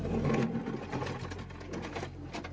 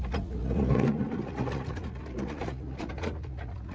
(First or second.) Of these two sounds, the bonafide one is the first